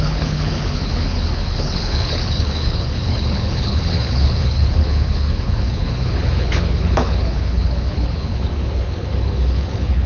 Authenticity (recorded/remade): remade